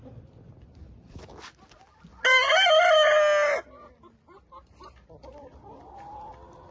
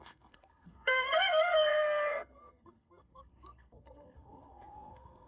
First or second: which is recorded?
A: first